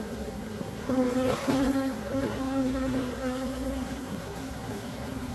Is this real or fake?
fake